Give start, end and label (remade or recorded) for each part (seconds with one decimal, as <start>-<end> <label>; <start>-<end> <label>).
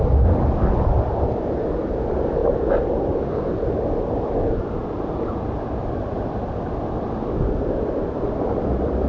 0.0-2.4 remade; 2.4-5.8 recorded; 5.8-9.1 remade